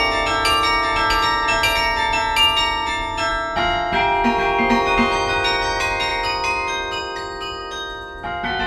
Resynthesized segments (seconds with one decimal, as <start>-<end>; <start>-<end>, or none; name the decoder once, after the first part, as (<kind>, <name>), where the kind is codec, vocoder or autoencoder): none

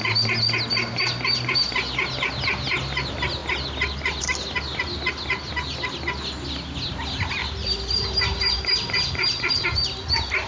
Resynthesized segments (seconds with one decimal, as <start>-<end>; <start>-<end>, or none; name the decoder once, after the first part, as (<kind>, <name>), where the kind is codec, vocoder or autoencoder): 7.4-9.5 (vocoder, BigVGAN v2)

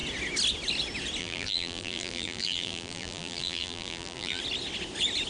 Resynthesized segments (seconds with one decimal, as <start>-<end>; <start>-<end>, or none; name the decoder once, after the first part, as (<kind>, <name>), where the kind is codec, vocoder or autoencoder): 1.2-4.4 (vocoder, BigVGAN v2)

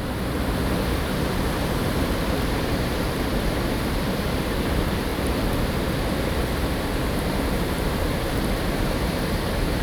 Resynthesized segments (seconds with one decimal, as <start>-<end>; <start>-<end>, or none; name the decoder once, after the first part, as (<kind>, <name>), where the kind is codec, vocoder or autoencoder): 0.0-0.6 (vocoder, BigVGAN v2); 1.9-3.3; 4.2-5.1; 7.2-9.8

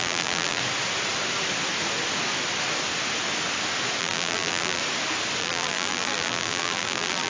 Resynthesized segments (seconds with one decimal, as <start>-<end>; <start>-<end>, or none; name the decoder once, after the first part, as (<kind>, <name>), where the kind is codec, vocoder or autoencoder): 0.0-0.6 (vocoder, BigVGAN v2); 4.0-4.8; 5.4-7.3

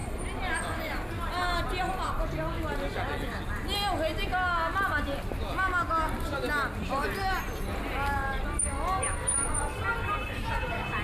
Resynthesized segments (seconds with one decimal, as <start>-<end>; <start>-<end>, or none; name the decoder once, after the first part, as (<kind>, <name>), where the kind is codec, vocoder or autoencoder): 0.0-1.1 (vocoder, BigVGAN v2)

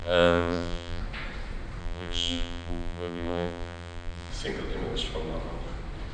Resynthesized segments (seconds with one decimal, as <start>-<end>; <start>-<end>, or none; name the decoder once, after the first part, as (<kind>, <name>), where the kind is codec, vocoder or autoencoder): 0.0-1.0 (vocoder, BigVGAN v2); 1.8-4.3

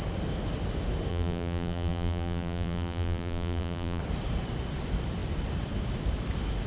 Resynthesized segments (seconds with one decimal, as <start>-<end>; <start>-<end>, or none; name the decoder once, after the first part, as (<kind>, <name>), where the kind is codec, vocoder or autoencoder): 1.1-4.0 (vocoder, BigVGAN v2)